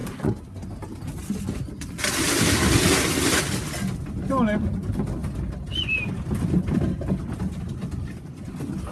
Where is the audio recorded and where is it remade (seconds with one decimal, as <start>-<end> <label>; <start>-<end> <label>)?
0.0-8.9 recorded